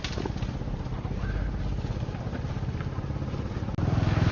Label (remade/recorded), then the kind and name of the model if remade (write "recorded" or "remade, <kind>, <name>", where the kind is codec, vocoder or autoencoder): recorded